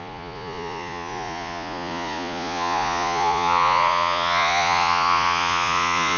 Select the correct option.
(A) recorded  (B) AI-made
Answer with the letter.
B